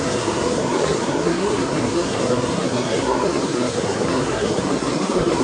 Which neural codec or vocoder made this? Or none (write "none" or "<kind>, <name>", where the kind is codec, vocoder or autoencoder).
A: codec, SNAC